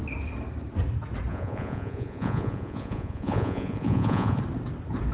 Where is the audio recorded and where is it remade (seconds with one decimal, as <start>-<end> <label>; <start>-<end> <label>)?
0.0-1.3 recorded; 1.3-4.4 remade; 4.4-5.1 recorded